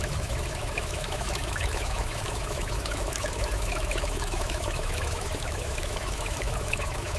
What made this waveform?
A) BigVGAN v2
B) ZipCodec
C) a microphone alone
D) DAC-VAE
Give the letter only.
D